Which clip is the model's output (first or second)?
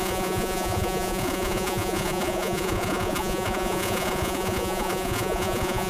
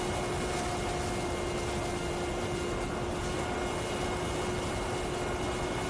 first